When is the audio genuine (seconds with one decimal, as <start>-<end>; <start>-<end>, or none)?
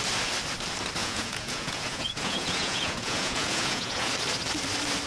0.0-1.0; 4.1-5.1